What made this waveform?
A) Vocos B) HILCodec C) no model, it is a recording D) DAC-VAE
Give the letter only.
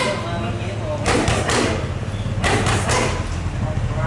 C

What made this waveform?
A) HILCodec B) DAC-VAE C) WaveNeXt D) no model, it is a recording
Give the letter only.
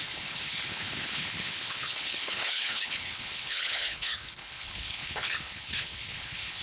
A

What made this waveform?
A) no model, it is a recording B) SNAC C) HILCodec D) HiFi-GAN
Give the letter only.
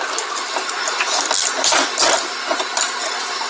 A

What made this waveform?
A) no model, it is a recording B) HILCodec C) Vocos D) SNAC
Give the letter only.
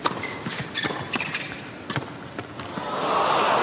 A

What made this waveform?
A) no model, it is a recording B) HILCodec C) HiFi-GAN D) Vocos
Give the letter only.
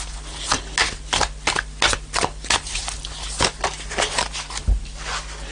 A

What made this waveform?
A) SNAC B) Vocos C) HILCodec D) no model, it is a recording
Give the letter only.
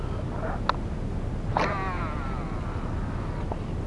D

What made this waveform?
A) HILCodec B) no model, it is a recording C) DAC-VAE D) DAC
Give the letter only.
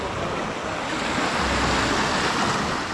B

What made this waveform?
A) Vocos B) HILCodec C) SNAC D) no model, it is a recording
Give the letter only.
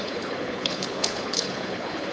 B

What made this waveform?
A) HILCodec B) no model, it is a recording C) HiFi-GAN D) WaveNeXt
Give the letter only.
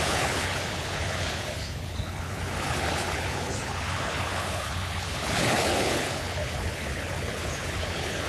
A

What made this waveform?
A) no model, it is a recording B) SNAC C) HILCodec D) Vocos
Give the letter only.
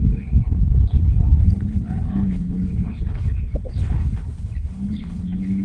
C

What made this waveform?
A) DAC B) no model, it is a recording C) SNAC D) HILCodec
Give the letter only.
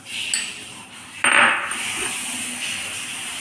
B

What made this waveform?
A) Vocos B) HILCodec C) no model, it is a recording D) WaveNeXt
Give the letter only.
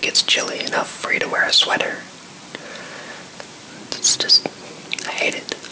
C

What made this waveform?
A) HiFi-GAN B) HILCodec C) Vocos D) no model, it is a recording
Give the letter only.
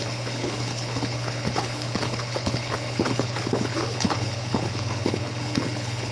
B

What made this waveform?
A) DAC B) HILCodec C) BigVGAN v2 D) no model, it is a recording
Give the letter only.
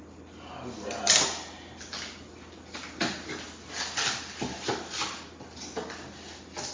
D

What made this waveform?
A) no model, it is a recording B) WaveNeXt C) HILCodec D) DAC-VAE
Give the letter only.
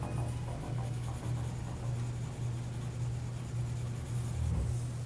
A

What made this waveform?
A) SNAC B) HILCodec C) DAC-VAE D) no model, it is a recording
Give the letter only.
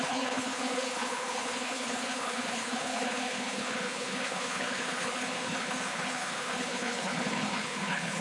B